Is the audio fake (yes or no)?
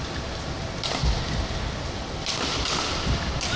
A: no